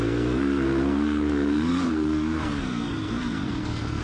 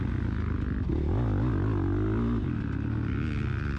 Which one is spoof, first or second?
first